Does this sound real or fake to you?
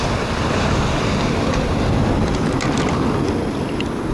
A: real